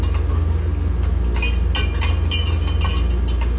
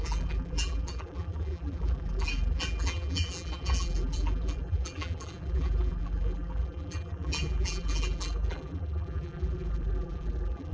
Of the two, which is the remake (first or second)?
second